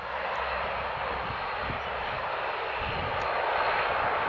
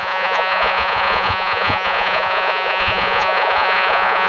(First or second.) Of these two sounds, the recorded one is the first